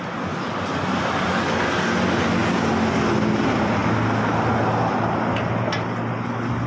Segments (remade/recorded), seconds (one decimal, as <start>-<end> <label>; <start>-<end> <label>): 0.0-6.7 recorded